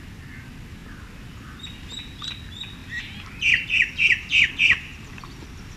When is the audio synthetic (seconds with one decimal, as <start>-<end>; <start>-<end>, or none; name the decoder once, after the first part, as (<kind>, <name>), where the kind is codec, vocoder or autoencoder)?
none